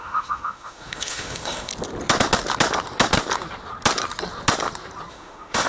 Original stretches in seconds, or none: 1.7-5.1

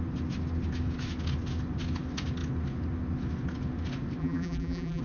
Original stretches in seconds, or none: 0.0-4.2